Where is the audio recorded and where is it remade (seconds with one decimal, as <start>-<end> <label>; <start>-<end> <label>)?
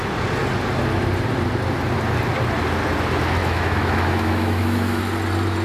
0.0-3.4 recorded; 3.4-5.0 remade; 5.0-5.6 recorded